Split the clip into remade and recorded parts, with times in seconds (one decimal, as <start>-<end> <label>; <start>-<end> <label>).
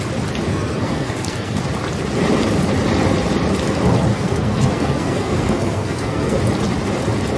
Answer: 0.0-0.5 recorded; 0.5-1.6 remade; 1.6-4.1 recorded; 4.1-6.4 remade; 6.4-7.4 recorded